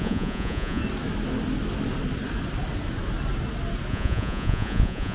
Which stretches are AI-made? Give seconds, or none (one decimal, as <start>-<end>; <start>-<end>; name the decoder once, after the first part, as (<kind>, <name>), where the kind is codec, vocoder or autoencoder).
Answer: 0.0-0.8 (vocoder, Vocos); 3.9-5.1